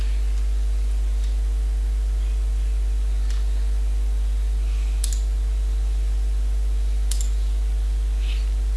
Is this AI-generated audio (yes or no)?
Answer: no